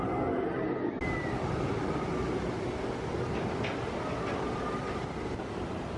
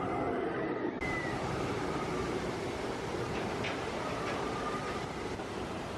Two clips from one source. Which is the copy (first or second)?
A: second